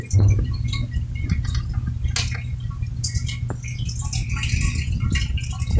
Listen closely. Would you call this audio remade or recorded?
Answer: recorded